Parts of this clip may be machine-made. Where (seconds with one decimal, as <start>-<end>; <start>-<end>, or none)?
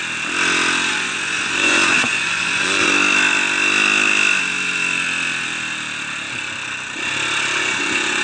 0.9-2.9; 7.6-8.2